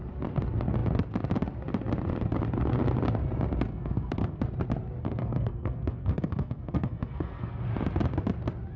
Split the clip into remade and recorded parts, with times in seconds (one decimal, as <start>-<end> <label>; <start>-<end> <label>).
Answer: 0.0-3.7 recorded; 3.7-4.4 remade; 4.4-5.0 recorded; 5.0-7.6 remade; 7.6-8.8 recorded